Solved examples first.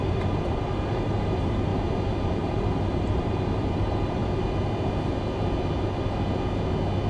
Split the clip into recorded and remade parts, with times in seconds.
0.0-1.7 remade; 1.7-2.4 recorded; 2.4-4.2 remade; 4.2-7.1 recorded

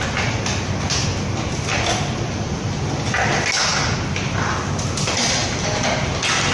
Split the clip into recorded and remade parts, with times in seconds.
0.0-6.5 recorded

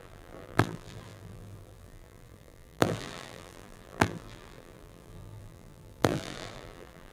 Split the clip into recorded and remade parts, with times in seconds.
0.0-7.1 remade

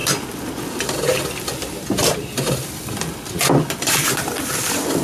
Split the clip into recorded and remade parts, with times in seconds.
0.0-1.1 remade; 1.1-3.4 recorded; 3.4-5.0 remade